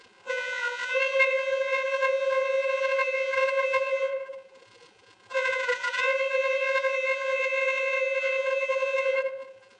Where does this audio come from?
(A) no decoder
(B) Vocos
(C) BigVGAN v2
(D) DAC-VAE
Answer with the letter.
B